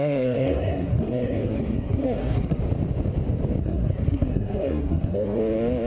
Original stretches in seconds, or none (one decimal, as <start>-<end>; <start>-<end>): 2.6-3.6; 5.4-5.9